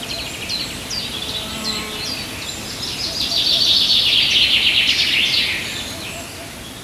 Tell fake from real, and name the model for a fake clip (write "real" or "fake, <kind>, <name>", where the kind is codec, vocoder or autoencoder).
real